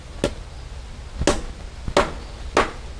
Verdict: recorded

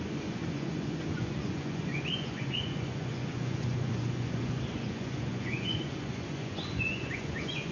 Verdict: remade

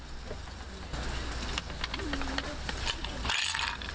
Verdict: recorded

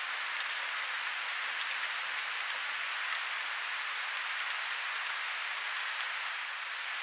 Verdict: recorded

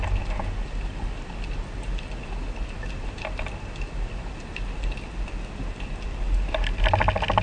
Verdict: recorded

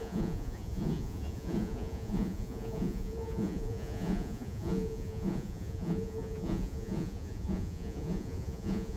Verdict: remade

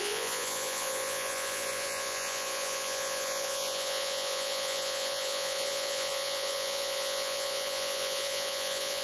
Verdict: remade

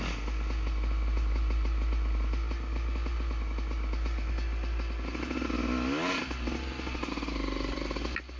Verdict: recorded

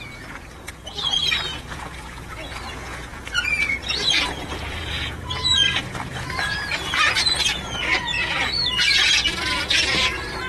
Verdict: remade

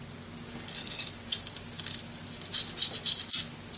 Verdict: recorded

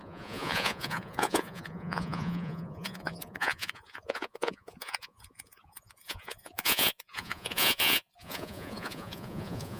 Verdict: remade